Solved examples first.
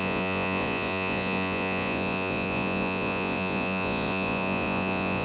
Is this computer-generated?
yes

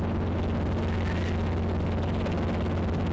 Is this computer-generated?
no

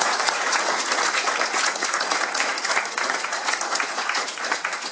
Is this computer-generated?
yes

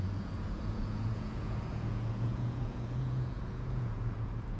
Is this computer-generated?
yes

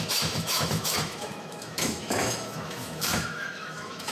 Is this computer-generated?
yes